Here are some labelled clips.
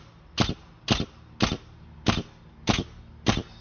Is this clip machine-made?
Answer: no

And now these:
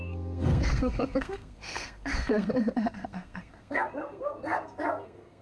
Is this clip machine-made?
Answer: yes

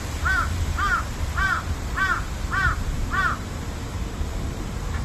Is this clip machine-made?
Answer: yes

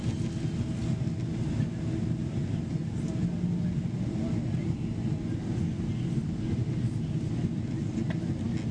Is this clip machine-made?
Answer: no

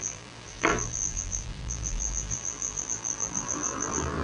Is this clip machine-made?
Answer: yes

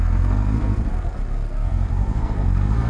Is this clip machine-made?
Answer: yes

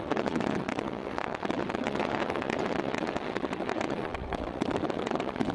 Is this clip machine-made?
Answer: yes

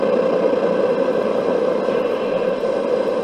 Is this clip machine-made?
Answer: no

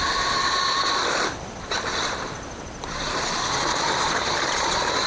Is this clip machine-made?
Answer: yes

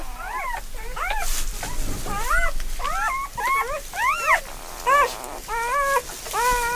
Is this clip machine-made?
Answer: no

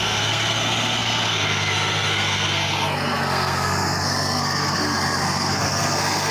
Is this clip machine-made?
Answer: yes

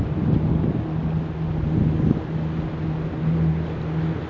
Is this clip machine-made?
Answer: no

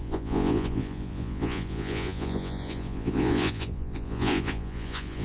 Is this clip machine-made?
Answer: yes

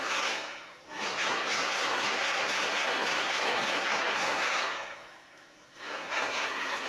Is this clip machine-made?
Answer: yes